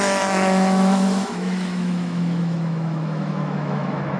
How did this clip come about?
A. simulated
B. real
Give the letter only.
A